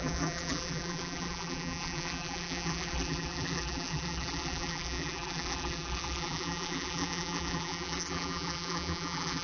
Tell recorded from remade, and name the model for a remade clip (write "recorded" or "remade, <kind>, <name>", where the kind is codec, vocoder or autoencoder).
remade, vocoder, BigVGAN v2